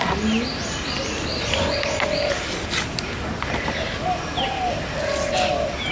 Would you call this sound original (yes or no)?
yes